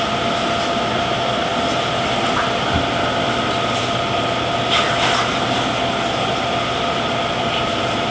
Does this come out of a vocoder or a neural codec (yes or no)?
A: no